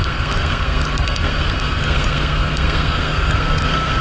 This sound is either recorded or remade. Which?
remade